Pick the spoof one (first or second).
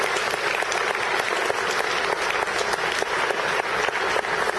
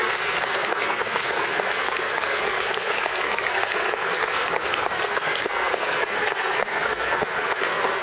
second